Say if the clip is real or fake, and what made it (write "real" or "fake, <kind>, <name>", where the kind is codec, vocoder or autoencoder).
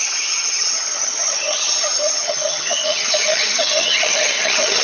fake, vocoder, HiFi-GAN